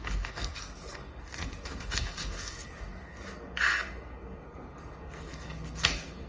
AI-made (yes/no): yes